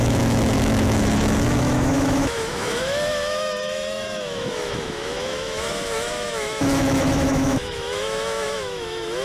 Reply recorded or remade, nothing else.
remade